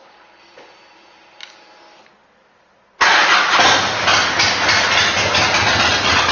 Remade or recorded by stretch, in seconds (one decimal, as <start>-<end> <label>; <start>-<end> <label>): 0.0-6.3 recorded